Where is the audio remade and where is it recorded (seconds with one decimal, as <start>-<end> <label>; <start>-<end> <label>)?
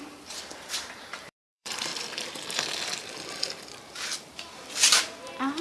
0.0-1.9 remade; 1.9-5.6 recorded